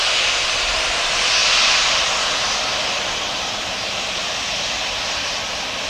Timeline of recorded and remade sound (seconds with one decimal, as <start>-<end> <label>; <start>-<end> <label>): 0.0-5.9 recorded